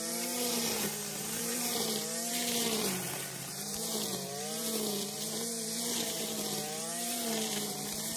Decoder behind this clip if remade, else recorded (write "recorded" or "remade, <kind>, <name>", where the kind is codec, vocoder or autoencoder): remade, vocoder, BigVGAN v2